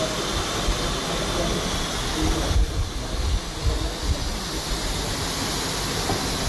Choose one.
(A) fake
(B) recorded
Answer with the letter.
B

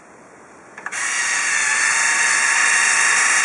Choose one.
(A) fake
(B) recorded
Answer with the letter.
B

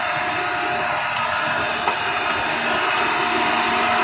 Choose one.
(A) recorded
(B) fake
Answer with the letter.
A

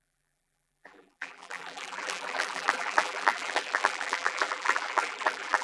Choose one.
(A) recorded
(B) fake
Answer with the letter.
B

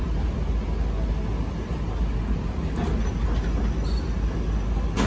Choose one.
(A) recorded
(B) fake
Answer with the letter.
A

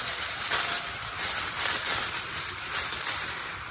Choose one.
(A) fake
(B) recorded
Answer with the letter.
A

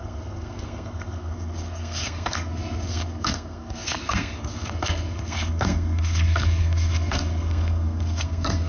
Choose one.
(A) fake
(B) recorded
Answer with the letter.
A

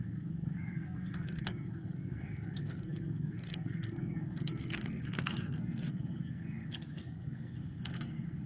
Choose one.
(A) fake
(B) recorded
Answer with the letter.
A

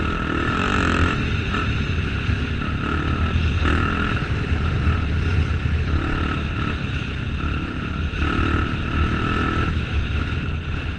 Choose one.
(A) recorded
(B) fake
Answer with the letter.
A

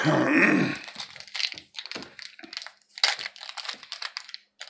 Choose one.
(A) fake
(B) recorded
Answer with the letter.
B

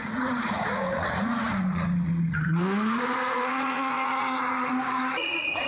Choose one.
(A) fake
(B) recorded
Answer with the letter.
A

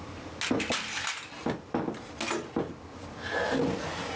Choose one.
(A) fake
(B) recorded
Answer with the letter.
B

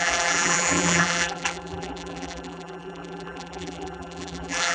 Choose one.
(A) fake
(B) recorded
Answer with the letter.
A